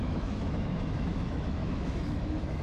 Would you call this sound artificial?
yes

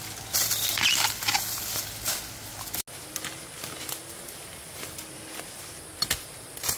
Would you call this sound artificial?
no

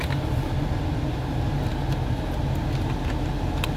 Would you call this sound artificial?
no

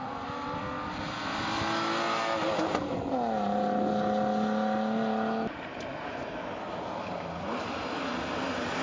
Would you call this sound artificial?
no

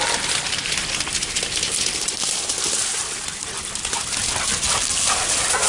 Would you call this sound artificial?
no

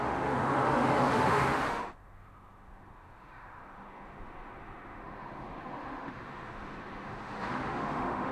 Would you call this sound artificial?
yes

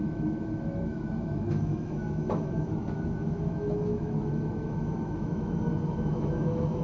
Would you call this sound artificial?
yes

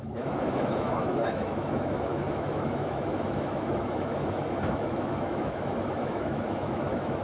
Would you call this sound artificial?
yes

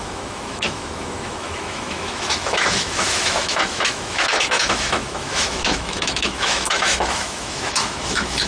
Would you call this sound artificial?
yes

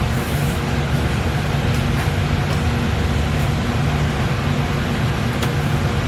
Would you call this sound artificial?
no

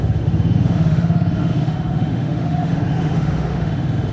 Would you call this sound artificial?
yes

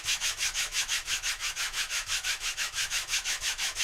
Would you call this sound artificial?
yes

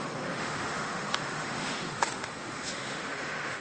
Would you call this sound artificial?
yes